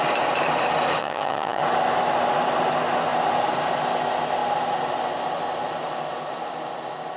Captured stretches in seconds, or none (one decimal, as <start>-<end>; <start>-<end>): 0.0-1.0; 1.6-7.2